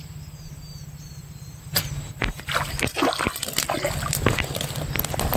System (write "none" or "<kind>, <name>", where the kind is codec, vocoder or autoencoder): none